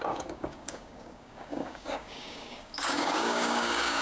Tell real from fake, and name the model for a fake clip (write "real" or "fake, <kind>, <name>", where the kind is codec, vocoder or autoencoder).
fake, codec, DAC